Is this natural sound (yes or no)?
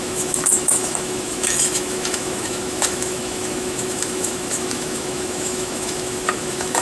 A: no